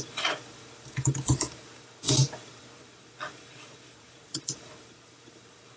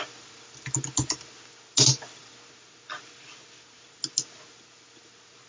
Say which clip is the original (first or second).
second